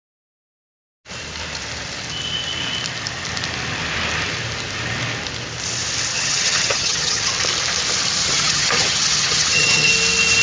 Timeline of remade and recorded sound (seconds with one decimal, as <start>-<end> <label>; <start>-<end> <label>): 0.0-6.1 recorded; 6.1-7.3 remade; 7.3-8.2 recorded; 8.2-9.9 remade; 9.9-10.4 recorded